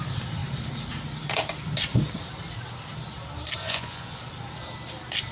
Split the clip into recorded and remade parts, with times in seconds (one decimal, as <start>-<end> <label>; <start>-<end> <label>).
0.0-3.6 recorded; 3.6-4.2 remade; 4.2-5.3 recorded